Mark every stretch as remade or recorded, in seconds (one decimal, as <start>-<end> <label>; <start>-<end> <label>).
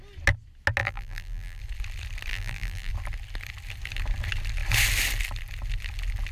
0.0-0.8 recorded; 0.8-1.6 remade; 1.6-2.3 recorded; 2.3-2.9 remade; 2.9-6.3 recorded